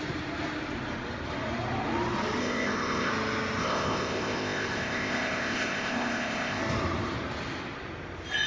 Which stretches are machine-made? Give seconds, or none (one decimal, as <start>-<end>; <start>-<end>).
2.4-3.1; 3.6-6.6